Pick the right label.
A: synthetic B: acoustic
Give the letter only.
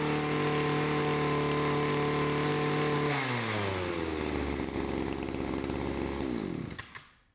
B